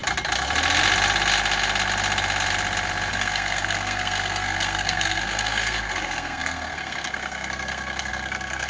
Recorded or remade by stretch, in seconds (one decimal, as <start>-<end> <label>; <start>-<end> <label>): 0.0-3.1 recorded; 3.1-8.7 remade